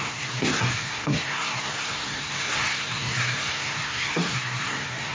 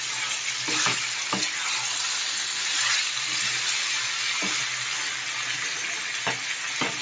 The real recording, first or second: second